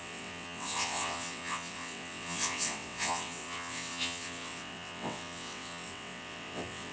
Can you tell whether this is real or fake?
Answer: fake